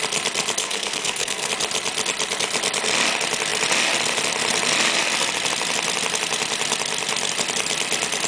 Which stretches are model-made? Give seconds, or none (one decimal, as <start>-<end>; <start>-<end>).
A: 0.6-1.5